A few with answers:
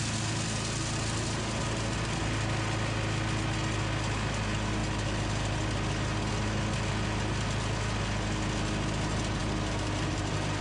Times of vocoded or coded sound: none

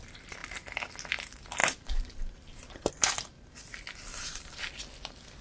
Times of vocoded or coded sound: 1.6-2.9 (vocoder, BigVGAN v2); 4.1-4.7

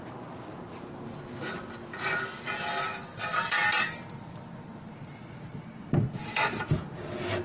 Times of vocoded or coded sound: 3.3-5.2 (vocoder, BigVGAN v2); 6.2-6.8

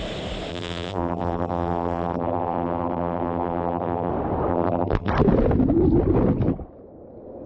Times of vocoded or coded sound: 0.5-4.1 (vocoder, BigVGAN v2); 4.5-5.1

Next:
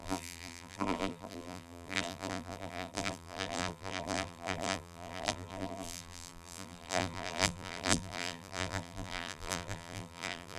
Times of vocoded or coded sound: 0.0-10.6 (vocoder, BigVGAN v2)

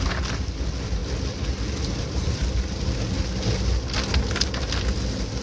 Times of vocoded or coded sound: none